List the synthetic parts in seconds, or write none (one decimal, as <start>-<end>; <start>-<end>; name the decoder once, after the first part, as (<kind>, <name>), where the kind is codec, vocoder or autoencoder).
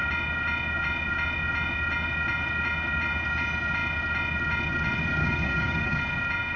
5.2-6.0 (codec, DAC)